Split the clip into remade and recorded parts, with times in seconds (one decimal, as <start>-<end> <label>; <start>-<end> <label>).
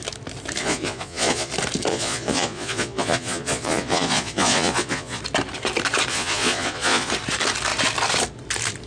0.0-0.6 recorded; 0.6-1.5 remade; 1.5-1.9 recorded; 1.9-5.2 remade; 5.2-6.1 recorded; 6.1-7.1 remade; 7.1-8.9 recorded